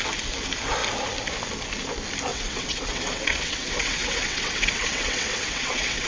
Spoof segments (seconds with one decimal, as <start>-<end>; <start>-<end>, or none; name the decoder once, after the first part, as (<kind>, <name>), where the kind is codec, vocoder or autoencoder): 2.3-6.1 (vocoder, WaveNeXt)